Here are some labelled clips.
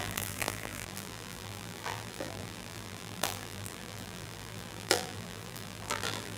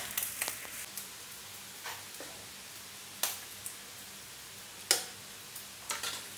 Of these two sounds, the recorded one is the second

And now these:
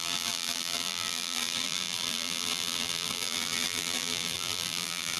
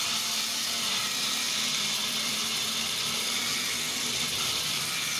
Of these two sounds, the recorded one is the second